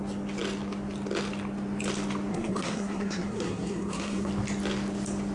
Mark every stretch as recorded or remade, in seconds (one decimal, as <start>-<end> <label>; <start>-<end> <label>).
0.0-2.3 recorded; 2.3-4.3 remade; 4.3-5.3 recorded